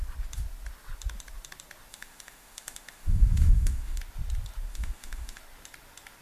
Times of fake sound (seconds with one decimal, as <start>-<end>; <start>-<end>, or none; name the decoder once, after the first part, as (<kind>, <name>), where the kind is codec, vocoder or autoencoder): 1.9-4.0 (autoencoder, DAC-VAE); 4.7-5.4